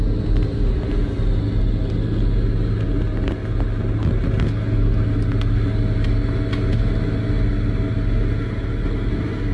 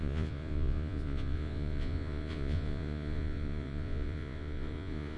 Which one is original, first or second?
first